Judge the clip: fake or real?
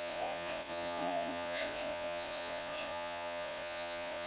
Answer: fake